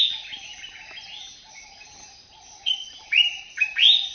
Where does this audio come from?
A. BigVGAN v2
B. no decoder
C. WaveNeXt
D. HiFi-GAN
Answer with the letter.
A